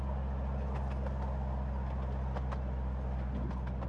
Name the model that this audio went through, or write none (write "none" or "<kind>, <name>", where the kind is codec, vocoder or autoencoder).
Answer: none